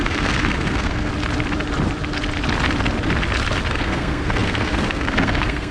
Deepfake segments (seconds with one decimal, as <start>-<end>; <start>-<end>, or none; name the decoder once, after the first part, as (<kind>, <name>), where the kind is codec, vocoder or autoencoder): 0.0-1.1 (codec, SNAC); 3.7-5.7